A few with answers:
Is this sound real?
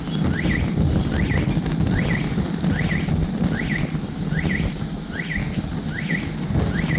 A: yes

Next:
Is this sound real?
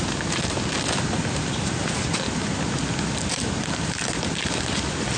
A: yes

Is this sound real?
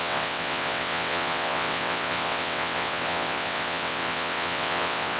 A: no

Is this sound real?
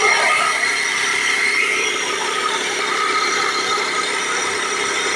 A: no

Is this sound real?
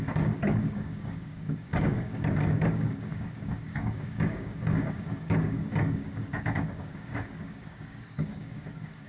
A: no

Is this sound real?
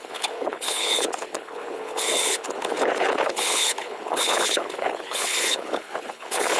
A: no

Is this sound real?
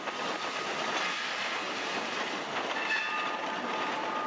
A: yes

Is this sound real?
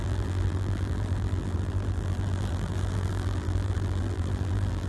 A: no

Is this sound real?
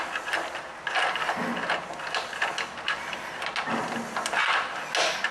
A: yes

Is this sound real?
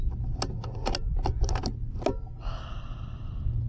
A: yes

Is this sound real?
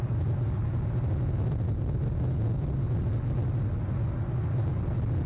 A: yes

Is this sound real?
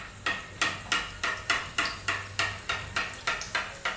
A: yes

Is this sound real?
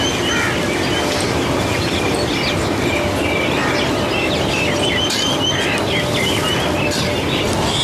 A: yes